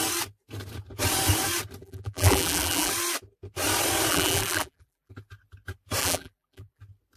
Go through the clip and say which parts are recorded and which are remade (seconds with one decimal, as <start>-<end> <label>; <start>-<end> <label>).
0.0-1.8 recorded; 1.8-2.9 remade; 2.9-4.1 recorded; 4.1-5.1 remade; 5.1-6.0 recorded; 6.0-6.8 remade; 6.8-7.2 recorded

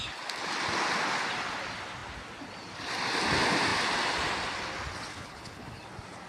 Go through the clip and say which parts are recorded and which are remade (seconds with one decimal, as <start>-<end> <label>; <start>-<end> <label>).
0.0-5.1 recorded; 5.1-5.8 remade; 5.8-6.3 recorded

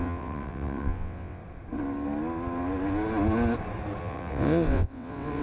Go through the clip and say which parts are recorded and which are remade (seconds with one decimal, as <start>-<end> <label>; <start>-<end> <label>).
0.0-1.4 remade; 1.4-4.0 recorded; 4.0-5.4 remade

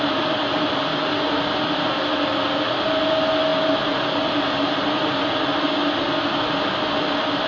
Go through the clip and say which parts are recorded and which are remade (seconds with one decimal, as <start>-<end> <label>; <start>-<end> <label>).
0.0-7.5 recorded

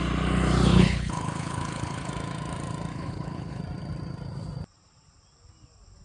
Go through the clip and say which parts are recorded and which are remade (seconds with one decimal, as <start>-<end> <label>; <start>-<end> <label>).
0.0-0.7 recorded; 0.7-2.1 remade; 2.1-2.9 recorded; 2.9-3.6 remade; 3.6-6.0 recorded

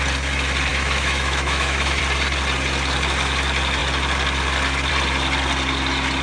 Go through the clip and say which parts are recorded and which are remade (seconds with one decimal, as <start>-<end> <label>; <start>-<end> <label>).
0.0-0.7 recorded; 0.7-2.0 remade; 2.0-6.2 recorded

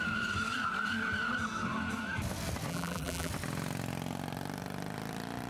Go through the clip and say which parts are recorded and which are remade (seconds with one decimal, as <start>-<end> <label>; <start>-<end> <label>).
0.0-2.7 recorded; 2.7-3.3 remade; 3.3-5.5 recorded